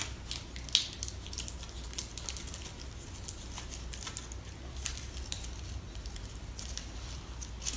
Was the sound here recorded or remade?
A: recorded